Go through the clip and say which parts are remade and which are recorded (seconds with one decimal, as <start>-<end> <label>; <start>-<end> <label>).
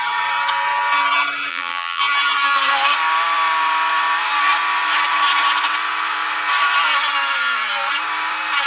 0.0-1.5 recorded; 1.5-2.0 remade; 2.0-8.7 recorded